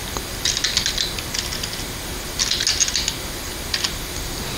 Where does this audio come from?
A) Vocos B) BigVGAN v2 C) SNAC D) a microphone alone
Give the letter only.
D